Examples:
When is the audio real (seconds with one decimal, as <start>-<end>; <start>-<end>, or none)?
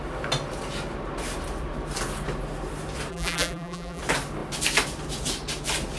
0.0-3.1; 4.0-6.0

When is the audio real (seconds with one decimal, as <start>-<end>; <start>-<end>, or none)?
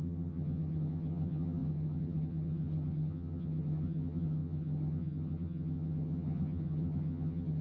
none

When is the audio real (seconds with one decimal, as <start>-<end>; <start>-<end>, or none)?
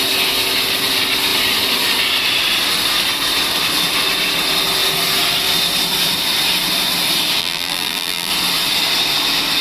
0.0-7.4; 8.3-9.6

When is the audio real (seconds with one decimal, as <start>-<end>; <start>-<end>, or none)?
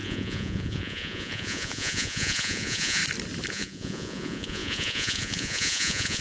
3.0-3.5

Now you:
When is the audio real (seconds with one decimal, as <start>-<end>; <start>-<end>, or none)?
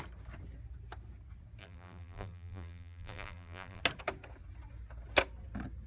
0.0-1.6; 3.8-5.9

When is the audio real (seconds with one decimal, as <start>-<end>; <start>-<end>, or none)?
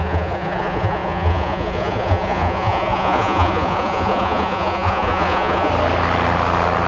5.7-6.9